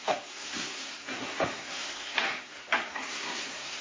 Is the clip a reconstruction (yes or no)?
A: yes